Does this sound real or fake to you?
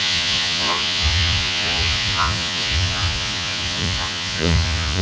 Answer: fake